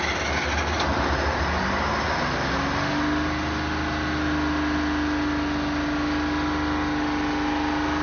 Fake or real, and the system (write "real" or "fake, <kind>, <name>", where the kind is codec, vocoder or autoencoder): real